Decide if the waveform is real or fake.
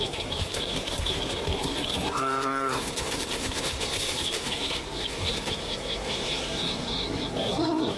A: fake